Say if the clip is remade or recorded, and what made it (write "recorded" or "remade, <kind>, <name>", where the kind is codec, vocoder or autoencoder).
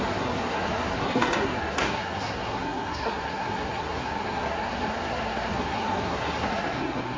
remade, codec, SNAC